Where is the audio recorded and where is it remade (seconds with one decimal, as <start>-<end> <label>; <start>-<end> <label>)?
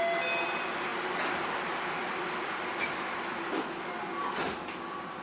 0.0-5.2 recorded